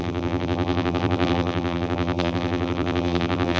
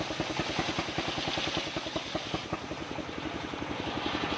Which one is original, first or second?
second